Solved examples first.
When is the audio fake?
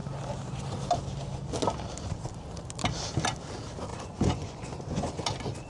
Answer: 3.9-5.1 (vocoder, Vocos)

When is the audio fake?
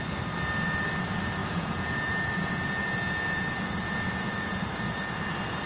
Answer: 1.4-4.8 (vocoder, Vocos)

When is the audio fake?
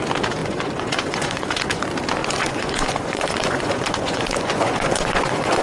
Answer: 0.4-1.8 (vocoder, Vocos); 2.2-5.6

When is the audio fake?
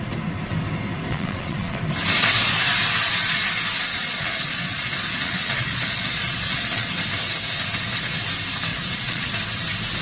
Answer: 1.1-1.8 (vocoder, Vocos); 3.9-6.9; 8.7-9.3